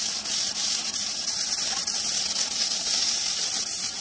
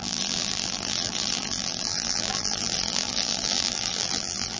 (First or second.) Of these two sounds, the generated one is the second